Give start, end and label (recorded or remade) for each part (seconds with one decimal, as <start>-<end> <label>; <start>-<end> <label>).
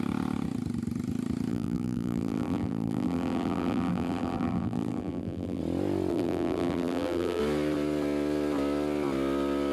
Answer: 0.0-1.5 recorded; 1.5-5.6 remade; 5.6-6.1 recorded; 6.1-7.4 remade; 7.4-9.7 recorded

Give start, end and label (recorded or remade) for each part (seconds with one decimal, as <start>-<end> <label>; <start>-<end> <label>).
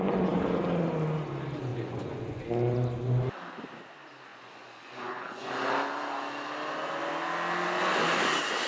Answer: 0.0-1.7 recorded; 1.7-2.4 remade; 2.4-4.3 recorded; 4.3-5.5 remade; 5.5-8.7 recorded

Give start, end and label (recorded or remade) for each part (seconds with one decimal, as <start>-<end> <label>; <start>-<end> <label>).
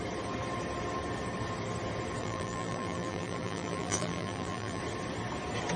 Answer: 0.0-2.2 recorded; 2.2-4.8 remade; 4.8-5.8 recorded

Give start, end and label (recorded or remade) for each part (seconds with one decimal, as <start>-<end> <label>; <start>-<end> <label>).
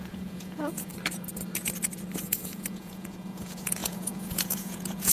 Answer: 0.0-0.9 remade; 0.9-2.2 recorded; 2.2-5.1 remade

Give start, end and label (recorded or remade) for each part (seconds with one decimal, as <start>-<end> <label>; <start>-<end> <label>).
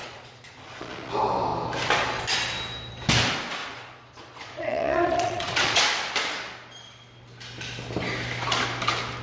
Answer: 0.0-1.1 remade; 1.1-3.6 recorded; 3.6-5.8 remade; 5.8-9.2 recorded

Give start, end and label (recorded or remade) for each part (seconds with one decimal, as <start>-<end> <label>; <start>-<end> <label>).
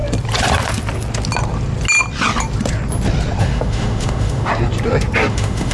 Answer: 0.0-3.4 recorded; 3.4-4.5 remade; 4.5-5.3 recorded; 5.3-5.7 remade